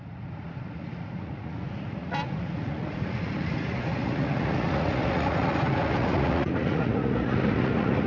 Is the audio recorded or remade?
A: remade